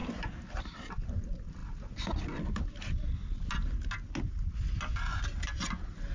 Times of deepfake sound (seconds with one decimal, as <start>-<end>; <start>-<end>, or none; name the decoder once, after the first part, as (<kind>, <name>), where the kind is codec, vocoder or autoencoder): none